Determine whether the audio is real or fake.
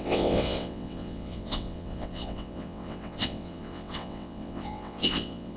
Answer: fake